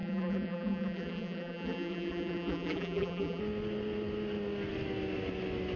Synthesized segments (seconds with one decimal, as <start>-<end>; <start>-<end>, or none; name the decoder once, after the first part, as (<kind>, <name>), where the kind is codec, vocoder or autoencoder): 0.0-3.4 (vocoder, BigVGAN v2)